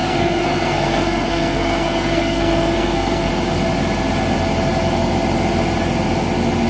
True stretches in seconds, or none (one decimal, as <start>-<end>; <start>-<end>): 3.3-6.7